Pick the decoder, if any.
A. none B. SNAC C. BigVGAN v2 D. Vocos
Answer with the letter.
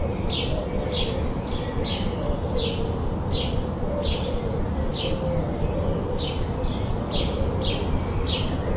A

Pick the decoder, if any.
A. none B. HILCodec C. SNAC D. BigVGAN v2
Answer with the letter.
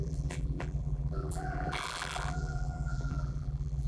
D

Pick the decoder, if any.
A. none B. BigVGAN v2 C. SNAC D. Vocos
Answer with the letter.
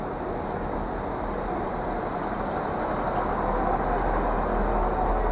A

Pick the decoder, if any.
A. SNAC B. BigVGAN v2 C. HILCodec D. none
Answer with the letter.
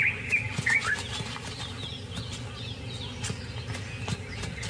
D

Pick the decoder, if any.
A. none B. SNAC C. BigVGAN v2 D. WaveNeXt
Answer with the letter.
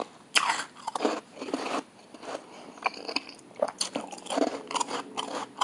C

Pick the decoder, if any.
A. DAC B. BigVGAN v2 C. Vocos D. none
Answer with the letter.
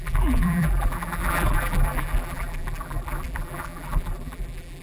B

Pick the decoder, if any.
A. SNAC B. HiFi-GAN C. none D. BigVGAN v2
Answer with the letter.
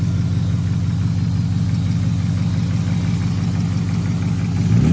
C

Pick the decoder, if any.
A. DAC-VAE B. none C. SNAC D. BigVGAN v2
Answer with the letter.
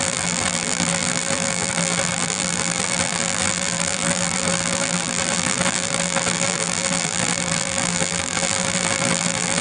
D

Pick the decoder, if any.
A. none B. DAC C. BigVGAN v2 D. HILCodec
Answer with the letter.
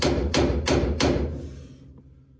A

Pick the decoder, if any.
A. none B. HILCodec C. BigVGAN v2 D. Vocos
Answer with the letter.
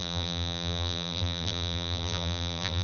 C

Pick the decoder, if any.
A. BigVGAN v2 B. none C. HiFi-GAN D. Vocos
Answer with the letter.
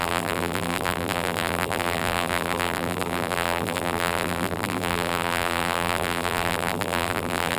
A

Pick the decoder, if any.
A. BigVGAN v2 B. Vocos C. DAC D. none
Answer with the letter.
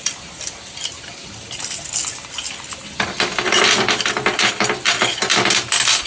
D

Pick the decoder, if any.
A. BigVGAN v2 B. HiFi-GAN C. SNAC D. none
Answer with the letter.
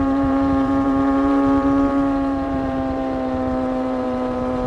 A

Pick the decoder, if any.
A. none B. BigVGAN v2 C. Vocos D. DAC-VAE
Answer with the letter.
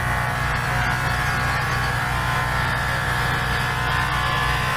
A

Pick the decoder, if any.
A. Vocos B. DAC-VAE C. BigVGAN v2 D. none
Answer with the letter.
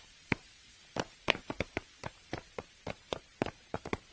C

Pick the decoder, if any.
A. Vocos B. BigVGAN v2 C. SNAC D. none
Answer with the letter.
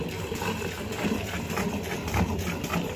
D